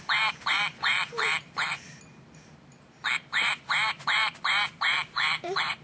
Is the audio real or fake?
fake